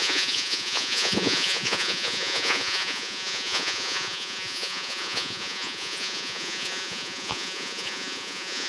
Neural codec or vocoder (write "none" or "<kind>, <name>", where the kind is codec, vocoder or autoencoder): vocoder, Vocos